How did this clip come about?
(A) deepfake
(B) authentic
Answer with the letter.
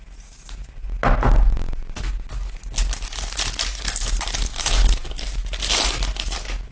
B